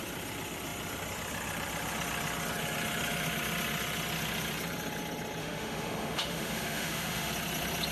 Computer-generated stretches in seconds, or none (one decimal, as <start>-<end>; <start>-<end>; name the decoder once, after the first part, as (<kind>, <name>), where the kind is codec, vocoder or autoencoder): 5.4-7.3 (autoencoder, DAC-VAE)

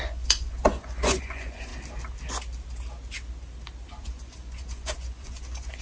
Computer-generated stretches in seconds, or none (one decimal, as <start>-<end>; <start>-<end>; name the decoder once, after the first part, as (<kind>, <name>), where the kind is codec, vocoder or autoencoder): 0.0-1.7 (vocoder, Vocos); 4.0-5.8

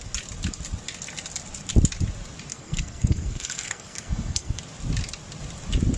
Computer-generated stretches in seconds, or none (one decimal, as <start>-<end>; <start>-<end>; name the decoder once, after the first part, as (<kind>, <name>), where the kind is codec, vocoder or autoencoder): 2.5-4.6 (codec, SNAC)

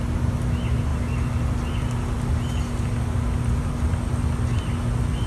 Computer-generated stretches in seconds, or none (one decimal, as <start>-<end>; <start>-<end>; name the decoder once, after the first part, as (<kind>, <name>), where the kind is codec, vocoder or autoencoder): none

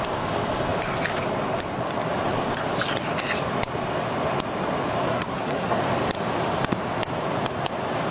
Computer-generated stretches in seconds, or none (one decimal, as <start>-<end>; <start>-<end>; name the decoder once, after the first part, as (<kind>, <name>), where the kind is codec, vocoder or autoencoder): 5.1-5.8 (codec, SNAC)

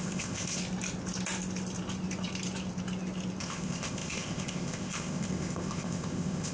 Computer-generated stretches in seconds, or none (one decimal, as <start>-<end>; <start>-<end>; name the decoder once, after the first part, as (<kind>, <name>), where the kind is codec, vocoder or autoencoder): 0.0-0.6 (codec, ZipCodec); 3.4-6.5